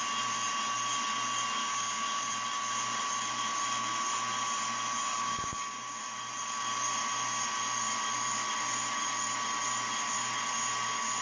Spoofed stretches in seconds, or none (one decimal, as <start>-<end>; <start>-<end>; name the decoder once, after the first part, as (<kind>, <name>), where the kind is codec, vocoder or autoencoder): 1.6-2.3 (codec, DAC); 5.1-6.0